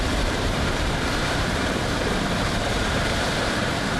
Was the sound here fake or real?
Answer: fake